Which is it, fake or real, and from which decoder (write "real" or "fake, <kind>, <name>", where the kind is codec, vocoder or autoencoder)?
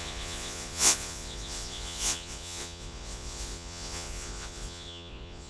fake, vocoder, Vocos